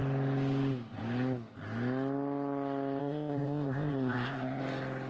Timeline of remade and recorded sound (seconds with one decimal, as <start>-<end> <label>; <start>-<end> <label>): 0.0-3.0 recorded; 3.0-4.6 remade; 4.6-5.1 recorded

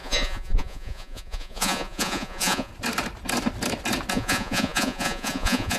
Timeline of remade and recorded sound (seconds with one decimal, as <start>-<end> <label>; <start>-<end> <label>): 0.0-2.7 remade; 2.7-4.1 recorded; 4.1-5.8 remade